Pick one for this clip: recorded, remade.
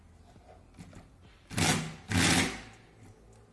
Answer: recorded